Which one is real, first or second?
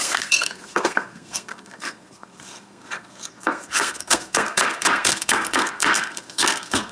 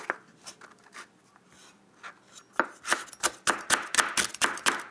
second